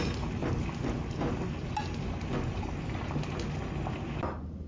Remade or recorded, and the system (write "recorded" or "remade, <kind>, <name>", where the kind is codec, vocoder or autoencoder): recorded